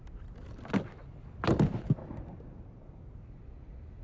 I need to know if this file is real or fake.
real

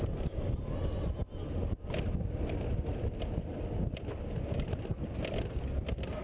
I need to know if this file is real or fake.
real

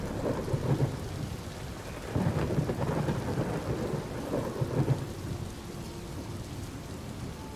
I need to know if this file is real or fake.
real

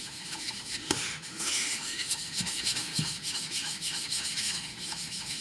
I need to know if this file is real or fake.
fake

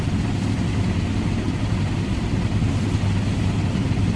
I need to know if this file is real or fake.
real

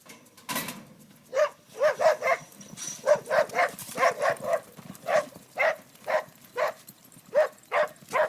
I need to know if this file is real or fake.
fake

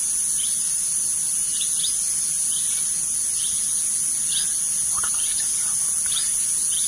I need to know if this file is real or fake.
real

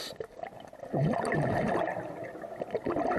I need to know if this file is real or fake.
real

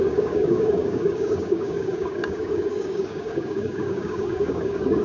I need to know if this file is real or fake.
fake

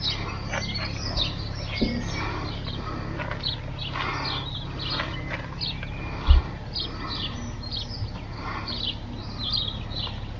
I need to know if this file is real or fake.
real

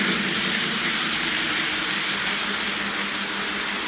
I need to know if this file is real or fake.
real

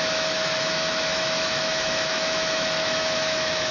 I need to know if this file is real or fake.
fake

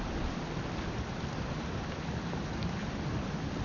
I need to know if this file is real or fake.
real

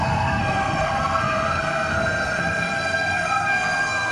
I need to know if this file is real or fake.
fake